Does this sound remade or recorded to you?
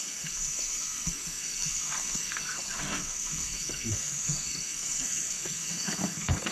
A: remade